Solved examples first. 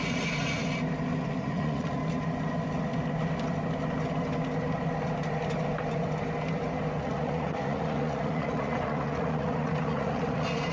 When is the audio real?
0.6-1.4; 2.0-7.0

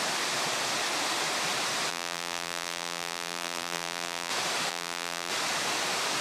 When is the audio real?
0.0-1.9; 4.3-4.7; 5.3-6.2

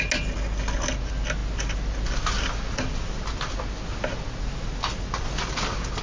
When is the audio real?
0.0-6.0

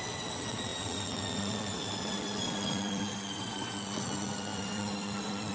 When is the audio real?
none

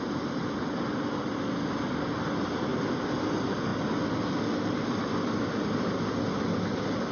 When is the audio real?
0.0-7.1

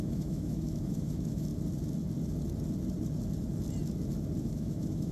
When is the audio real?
1.5-4.4